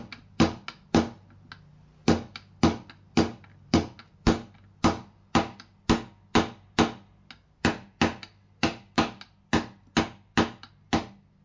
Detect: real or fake real